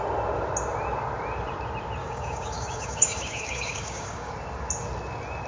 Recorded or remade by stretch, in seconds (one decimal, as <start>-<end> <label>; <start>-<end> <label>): 0.0-2.0 recorded; 2.0-4.3 remade; 4.3-5.5 recorded